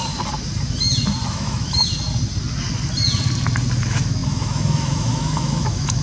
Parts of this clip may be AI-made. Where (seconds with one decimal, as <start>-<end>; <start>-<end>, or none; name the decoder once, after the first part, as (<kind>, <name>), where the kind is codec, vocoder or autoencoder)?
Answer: 1.3-1.9 (autoencoder, DAC-VAE); 3.8-6.0